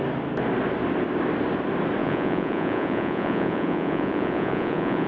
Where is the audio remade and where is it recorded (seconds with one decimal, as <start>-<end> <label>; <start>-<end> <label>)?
0.0-2.0 recorded; 2.0-5.1 remade